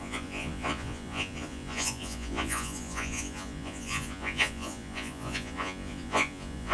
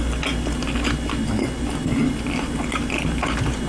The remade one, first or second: first